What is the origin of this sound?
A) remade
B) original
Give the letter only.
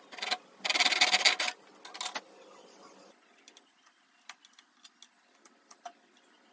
B